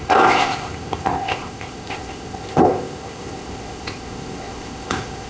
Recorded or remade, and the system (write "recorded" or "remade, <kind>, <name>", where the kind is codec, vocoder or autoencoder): remade, codec, ZipCodec